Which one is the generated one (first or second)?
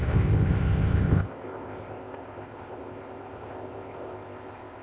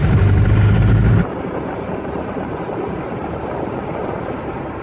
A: first